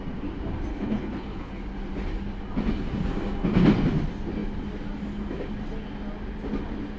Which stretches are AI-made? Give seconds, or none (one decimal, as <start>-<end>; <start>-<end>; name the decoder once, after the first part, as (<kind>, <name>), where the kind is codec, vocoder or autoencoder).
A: 0.7-1.5 (codec, HILCodec)